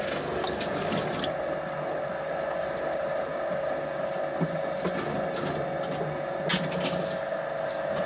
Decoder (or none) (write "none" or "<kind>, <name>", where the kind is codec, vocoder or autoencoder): none